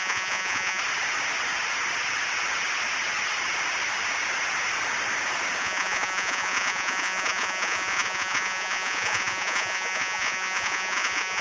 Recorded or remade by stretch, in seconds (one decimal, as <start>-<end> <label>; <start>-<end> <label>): 0.0-0.8 remade; 0.8-5.6 recorded; 5.6-11.4 remade